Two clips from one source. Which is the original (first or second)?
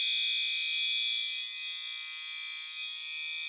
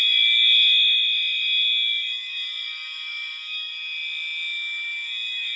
first